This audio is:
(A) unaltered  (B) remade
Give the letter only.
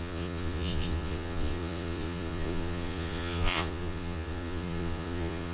B